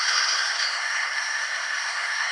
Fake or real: fake